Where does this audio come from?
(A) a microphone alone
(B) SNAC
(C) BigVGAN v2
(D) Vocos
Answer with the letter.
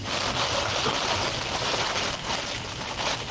A